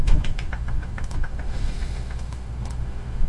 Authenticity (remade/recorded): remade